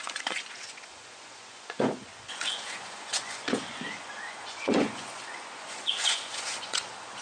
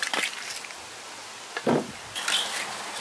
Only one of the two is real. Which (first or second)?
second